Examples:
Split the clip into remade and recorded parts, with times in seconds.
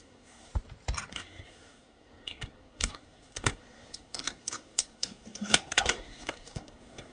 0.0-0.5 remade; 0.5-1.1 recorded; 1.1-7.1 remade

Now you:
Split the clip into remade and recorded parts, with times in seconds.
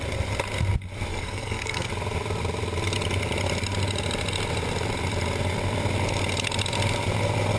0.0-1.1 recorded; 1.1-1.9 remade; 1.9-7.6 recorded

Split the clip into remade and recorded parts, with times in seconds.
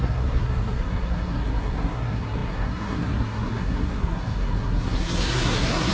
0.0-5.9 remade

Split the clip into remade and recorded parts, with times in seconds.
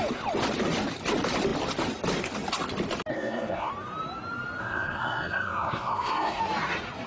0.0-3.1 recorded; 3.1-3.7 remade; 3.7-4.6 recorded; 4.6-6.4 remade; 6.4-7.1 recorded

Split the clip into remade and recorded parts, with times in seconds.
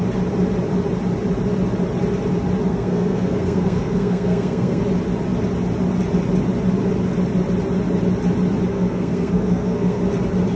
0.0-2.7 recorded; 2.7-4.8 remade; 4.8-8.7 recorded; 8.7-10.0 remade; 10.0-10.6 recorded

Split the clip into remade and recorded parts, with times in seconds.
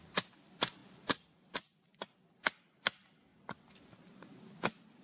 0.0-5.0 recorded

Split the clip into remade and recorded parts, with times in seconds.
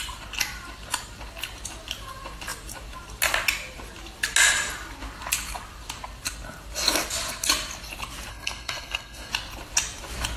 0.0-8.3 recorded; 8.3-9.3 remade; 9.3-10.4 recorded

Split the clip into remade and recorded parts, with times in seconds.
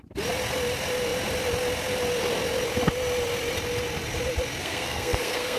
0.0-4.6 recorded; 4.6-5.6 remade